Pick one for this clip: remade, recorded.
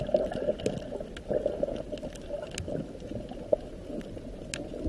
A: recorded